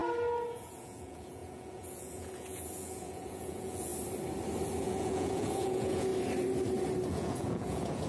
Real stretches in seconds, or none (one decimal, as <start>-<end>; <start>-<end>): 0.0-0.5; 3.9-4.8; 6.1-7.1